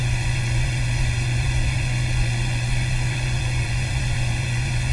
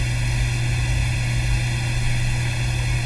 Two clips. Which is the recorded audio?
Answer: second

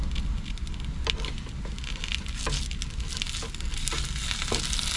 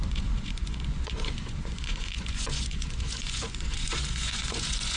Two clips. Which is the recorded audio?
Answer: first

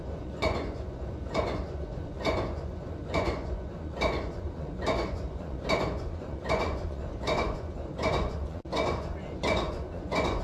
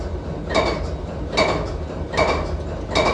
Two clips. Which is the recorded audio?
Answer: second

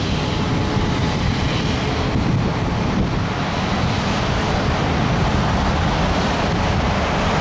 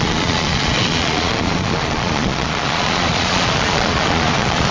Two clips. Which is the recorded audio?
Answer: first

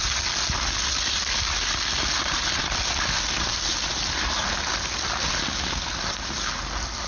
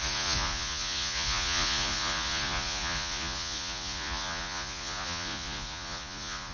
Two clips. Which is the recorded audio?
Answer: first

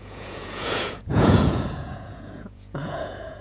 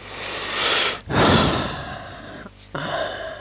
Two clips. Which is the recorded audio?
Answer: second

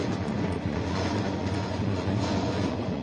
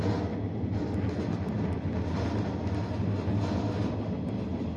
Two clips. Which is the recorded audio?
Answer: second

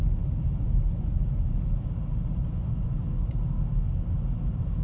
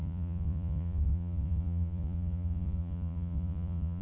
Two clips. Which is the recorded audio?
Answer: first